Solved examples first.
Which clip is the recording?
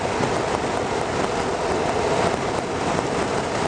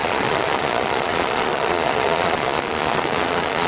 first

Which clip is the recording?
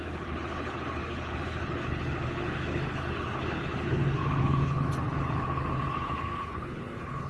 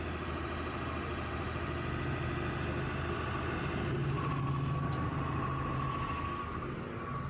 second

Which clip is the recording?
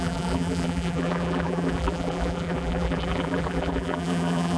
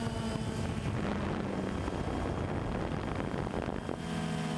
second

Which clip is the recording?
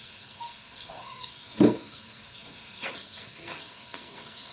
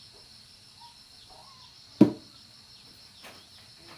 second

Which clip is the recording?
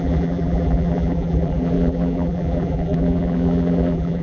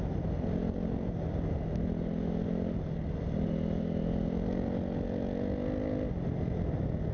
second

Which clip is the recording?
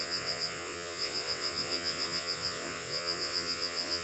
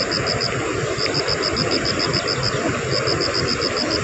second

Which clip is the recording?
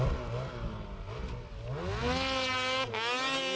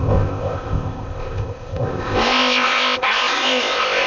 first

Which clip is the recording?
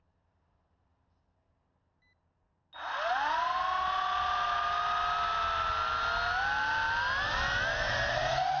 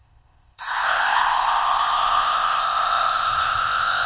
first